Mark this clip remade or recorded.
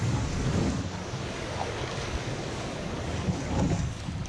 remade